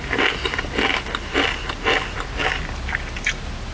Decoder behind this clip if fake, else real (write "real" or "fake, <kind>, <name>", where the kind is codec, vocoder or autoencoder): real